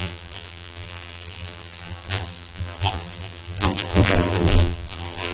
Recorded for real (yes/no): no